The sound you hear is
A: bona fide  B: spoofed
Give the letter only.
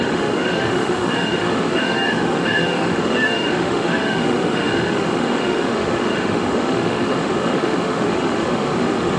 B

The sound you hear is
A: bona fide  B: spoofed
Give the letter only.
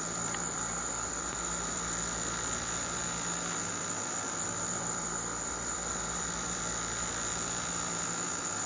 B